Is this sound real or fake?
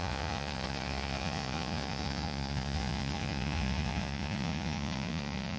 fake